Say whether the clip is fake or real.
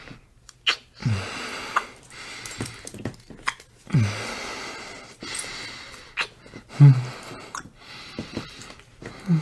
real